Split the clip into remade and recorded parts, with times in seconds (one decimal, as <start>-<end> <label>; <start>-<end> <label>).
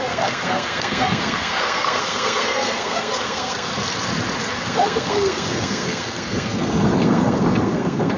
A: 0.0-3.7 remade; 3.7-4.6 recorded; 4.6-8.2 remade